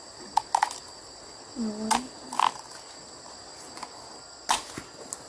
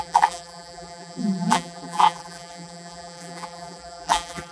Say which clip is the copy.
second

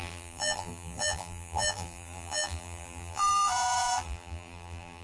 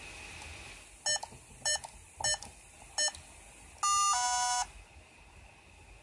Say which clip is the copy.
first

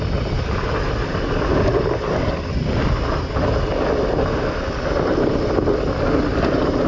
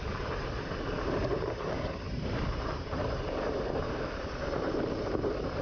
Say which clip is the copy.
second